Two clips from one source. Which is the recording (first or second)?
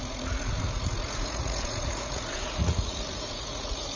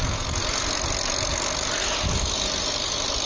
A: second